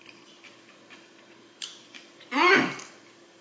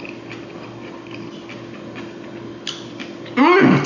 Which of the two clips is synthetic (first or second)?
first